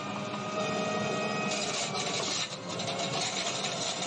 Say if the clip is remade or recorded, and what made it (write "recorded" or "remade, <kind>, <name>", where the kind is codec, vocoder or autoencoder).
recorded